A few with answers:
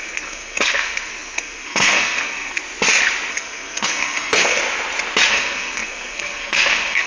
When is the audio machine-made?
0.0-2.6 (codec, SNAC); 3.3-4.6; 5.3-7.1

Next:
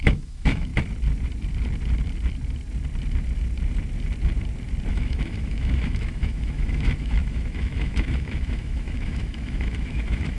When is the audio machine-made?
0.0-0.7 (autoencoder, DAC-VAE); 4.9-10.4